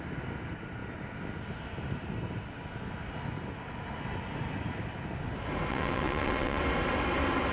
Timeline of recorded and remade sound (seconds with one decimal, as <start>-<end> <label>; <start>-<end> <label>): 0.0-5.7 recorded; 5.7-6.6 remade; 6.6-7.5 recorded